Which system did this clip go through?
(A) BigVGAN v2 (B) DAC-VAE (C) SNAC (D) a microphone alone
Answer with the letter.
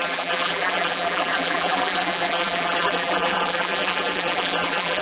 A